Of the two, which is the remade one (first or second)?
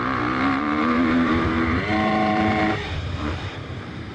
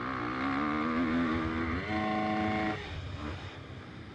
first